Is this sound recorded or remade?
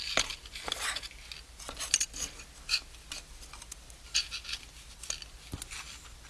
recorded